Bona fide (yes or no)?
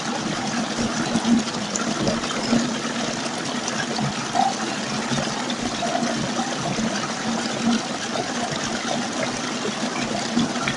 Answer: yes